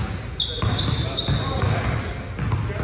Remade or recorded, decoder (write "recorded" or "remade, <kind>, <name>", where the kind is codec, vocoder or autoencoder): recorded